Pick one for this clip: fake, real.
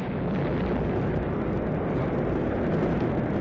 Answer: real